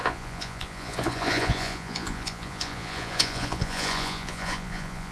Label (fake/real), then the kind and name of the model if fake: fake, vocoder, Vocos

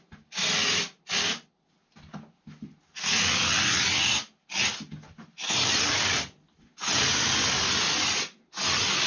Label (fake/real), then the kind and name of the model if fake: real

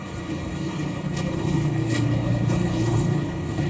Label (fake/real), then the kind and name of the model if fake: fake, codec, HILCodec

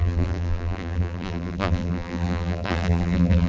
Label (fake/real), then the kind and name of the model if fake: fake, vocoder, BigVGAN v2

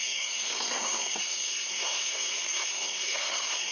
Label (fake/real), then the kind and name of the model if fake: fake, codec, SNAC